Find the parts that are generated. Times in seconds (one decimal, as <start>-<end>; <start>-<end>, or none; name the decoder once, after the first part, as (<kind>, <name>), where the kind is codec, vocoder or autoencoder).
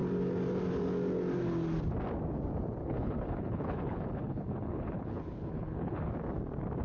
2.8-6.1 (codec, HILCodec)